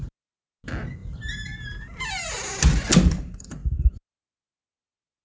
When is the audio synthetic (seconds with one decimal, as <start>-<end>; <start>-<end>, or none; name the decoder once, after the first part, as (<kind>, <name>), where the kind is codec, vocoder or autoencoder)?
none